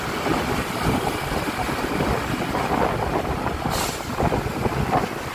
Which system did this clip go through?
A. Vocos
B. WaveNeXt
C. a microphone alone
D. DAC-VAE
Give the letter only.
C